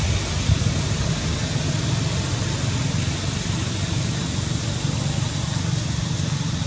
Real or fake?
real